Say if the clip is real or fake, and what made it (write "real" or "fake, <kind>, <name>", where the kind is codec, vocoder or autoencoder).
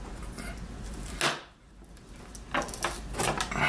real